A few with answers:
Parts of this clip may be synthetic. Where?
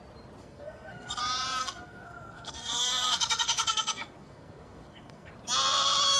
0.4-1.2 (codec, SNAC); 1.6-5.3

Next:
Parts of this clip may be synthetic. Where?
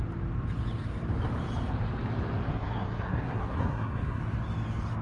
2.5-4.2 (codec, SNAC)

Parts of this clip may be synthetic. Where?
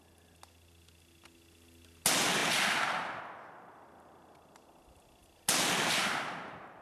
none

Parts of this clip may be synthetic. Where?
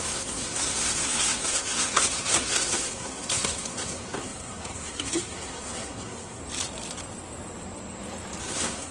0.0-6.4 (codec, SNAC); 8.4-8.9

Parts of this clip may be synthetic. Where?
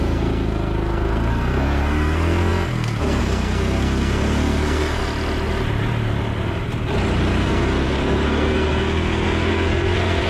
0.0-5.0 (codec, SNAC); 7.4-10.3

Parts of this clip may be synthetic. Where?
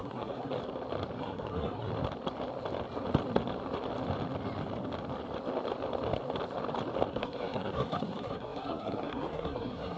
0.0-0.6 (codec, SNAC); 1.2-1.9; 7.1-10.0